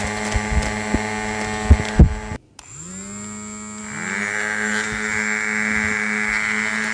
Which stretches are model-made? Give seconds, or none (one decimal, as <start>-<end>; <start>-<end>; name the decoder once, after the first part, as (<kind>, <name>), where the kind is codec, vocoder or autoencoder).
none